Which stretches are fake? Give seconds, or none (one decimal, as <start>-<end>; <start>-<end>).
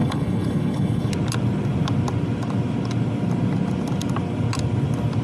0.0-1.1